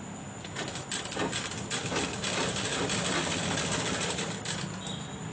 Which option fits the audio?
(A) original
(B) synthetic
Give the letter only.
A